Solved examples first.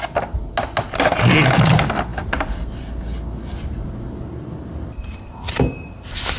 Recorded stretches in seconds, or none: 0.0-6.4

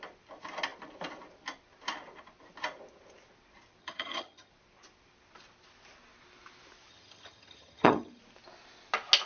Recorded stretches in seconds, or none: 0.0-3.8; 4.5-6.9; 8.2-9.3

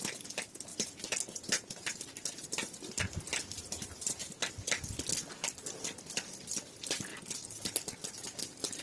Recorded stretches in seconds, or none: 0.0-0.7; 4.5-8.8

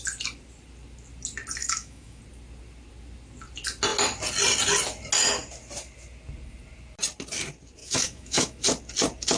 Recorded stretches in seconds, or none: 0.0-1.6; 2.2-7.8; 8.6-9.4